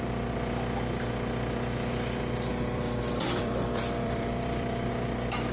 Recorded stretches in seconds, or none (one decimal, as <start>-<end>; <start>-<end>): 0.0-2.5; 4.9-5.5